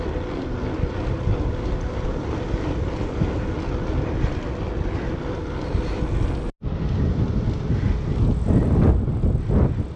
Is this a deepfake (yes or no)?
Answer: no